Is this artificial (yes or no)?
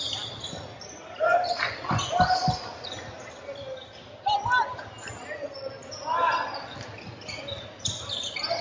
no